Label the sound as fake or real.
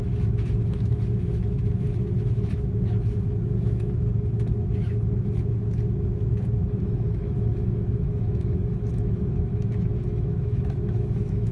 fake